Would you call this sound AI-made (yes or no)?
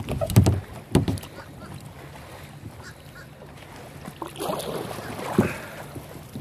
no